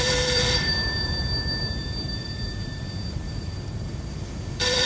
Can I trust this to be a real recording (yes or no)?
no